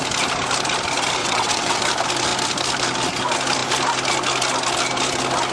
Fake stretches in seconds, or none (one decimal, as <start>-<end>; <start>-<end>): 1.2-1.8